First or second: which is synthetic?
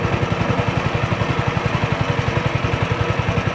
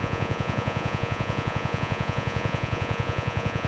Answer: second